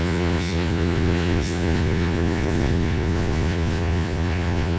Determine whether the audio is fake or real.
fake